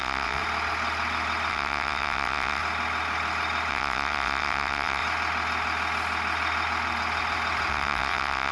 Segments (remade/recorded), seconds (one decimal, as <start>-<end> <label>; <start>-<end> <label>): 0.0-0.4 remade; 0.4-1.5 recorded; 1.5-2.6 remade; 2.6-3.7 recorded; 3.7-5.0 remade; 5.0-7.7 recorded; 7.7-8.5 remade